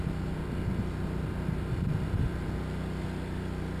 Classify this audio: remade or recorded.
recorded